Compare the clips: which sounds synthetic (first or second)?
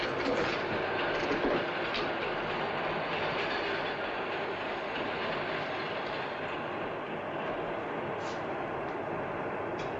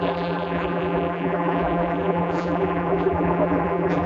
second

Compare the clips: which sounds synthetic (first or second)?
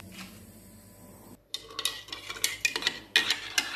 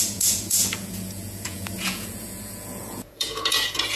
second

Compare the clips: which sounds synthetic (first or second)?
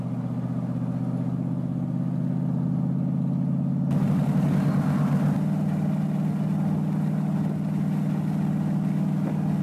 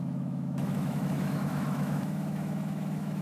second